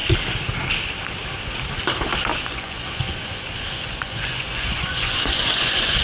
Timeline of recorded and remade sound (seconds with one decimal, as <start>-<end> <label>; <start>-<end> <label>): 0.0-2.3 recorded; 2.3-6.0 remade